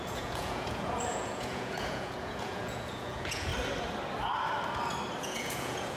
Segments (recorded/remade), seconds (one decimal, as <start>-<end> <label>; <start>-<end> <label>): 0.0-3.5 remade; 3.5-5.2 recorded; 5.2-6.0 remade